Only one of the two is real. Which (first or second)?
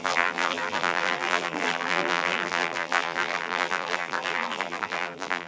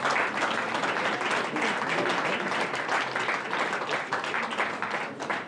second